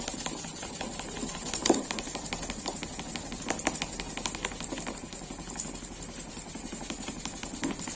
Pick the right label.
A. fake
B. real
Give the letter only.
B